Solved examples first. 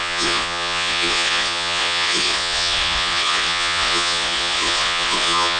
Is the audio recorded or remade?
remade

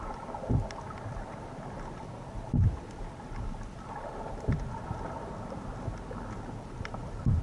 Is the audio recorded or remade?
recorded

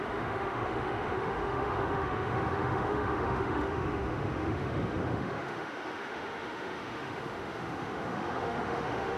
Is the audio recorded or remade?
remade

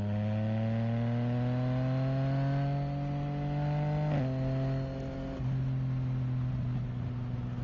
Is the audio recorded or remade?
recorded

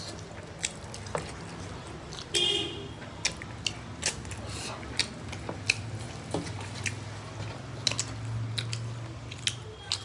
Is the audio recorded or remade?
recorded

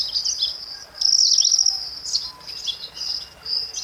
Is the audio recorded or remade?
recorded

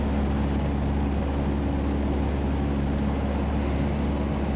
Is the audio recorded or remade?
recorded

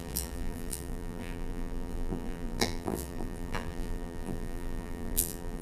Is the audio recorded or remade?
remade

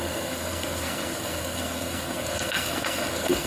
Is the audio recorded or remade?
remade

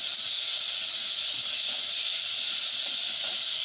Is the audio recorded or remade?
recorded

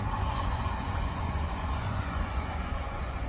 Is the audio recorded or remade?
remade